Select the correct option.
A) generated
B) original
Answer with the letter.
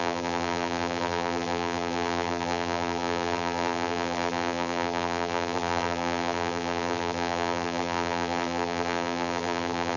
A